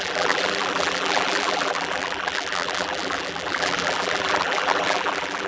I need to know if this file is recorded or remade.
remade